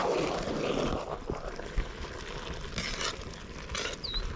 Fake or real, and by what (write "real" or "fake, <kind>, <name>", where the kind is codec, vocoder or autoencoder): real